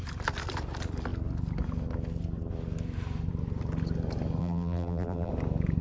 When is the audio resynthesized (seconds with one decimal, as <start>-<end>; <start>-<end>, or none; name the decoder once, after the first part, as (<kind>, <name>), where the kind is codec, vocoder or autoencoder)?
4.4-5.3 (vocoder, BigVGAN v2)